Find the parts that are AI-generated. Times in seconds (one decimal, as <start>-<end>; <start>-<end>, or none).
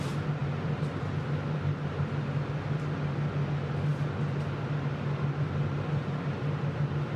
0.4-2.0